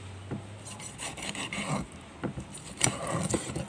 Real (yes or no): yes